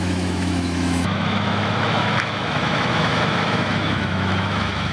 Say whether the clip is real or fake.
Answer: fake